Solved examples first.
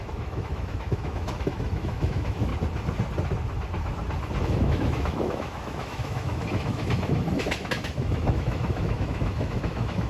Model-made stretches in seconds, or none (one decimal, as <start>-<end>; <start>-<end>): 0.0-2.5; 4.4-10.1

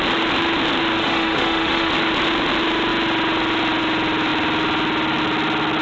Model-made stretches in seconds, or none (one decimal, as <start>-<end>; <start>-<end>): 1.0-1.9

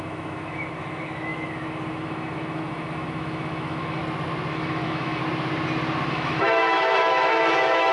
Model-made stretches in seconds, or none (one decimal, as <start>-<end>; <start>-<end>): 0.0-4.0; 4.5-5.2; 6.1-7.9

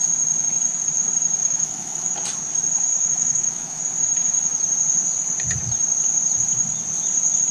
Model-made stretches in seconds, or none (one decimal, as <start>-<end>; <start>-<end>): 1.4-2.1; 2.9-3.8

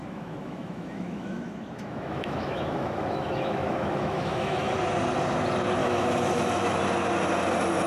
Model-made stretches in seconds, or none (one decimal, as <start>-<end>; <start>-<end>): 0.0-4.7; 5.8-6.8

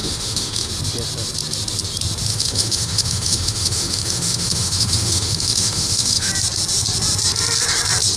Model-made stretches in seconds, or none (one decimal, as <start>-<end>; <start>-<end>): 0.0-0.7; 2.3-6.3